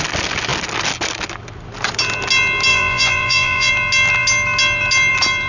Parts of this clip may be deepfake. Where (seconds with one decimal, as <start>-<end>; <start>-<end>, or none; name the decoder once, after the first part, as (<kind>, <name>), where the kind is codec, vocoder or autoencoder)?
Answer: 2.7-3.7 (vocoder, Vocos)